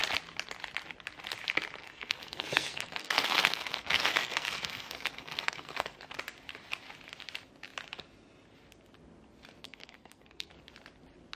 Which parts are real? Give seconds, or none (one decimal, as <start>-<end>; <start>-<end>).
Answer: 0.0-1.8; 6.1-9.6; 10.5-11.4